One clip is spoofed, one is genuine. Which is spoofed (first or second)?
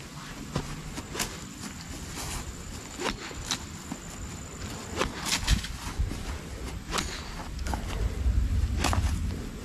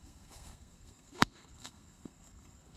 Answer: second